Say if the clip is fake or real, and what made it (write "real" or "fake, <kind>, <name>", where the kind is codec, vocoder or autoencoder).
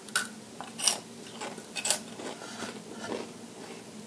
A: real